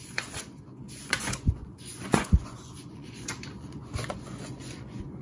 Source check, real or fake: fake